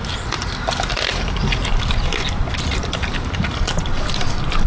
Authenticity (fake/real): fake